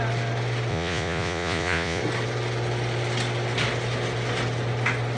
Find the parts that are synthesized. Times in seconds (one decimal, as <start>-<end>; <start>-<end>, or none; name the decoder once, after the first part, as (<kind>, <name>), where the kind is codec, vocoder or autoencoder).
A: 0.7-2.0 (vocoder, Vocos)